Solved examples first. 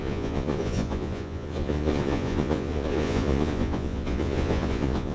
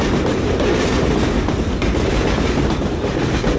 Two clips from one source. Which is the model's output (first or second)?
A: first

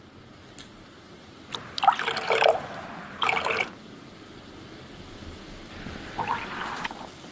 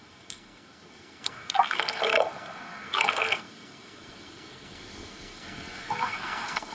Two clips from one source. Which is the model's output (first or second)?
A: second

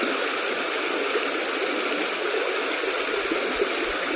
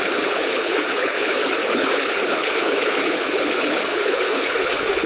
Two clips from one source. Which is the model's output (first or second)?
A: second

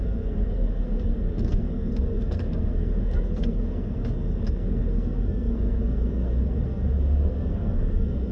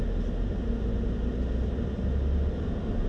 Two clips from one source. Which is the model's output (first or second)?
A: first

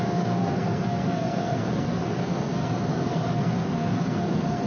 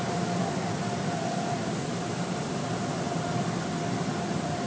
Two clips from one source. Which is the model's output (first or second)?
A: first